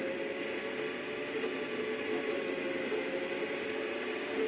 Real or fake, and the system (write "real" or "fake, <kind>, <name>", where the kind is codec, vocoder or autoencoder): real